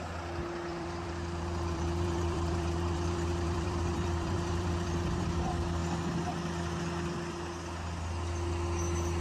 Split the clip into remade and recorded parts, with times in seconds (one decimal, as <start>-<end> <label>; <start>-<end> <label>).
0.0-0.7 recorded; 0.7-5.2 remade; 5.2-9.2 recorded